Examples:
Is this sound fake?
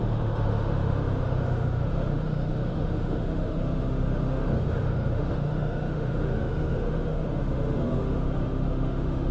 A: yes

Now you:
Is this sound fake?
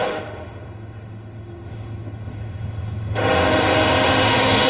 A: yes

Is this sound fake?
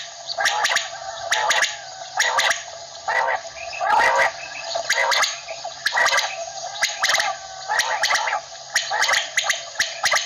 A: no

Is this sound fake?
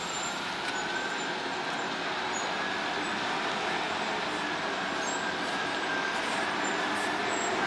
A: no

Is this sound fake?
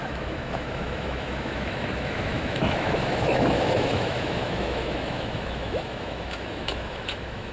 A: yes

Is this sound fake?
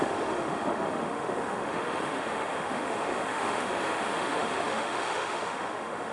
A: yes